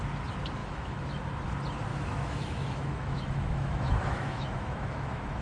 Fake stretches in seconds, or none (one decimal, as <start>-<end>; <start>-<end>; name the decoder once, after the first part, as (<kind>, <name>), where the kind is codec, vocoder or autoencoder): 0.6-1.2 (autoencoder, DAC-VAE); 1.9-5.4